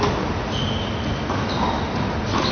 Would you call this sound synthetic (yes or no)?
no